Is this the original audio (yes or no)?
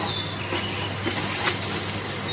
yes